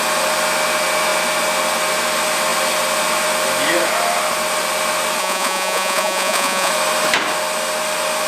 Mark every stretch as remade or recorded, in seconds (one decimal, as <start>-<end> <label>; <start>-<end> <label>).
0.0-5.2 recorded; 5.2-6.7 remade; 6.7-8.3 recorded